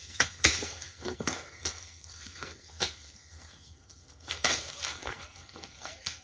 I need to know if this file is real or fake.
fake